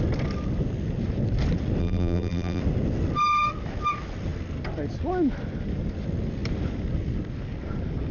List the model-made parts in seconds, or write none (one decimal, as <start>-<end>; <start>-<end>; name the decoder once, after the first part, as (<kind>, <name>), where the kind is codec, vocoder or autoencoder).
1.8-2.6 (vocoder, BigVGAN v2)

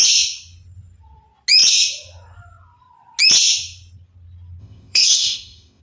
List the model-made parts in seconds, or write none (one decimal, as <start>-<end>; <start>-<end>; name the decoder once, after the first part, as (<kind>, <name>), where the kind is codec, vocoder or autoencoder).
4.6-5.8 (codec, ZipCodec)